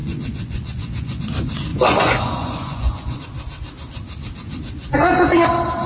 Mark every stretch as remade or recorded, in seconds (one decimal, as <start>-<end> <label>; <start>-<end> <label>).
0.0-1.2 remade; 1.2-1.7 recorded; 1.7-3.2 remade; 3.2-5.9 recorded